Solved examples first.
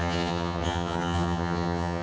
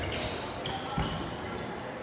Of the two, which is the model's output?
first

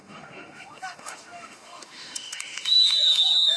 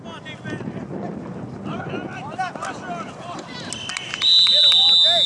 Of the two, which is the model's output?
first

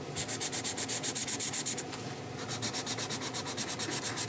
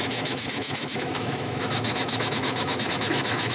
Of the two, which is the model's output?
second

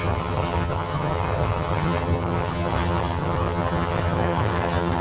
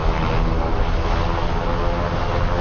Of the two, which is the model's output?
first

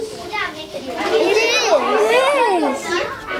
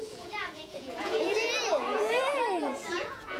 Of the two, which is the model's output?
second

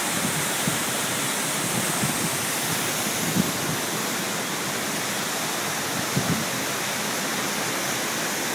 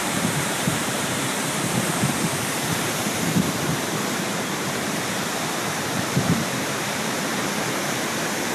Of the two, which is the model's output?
second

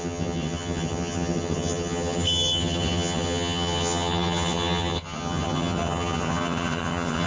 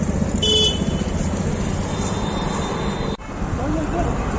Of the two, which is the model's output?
first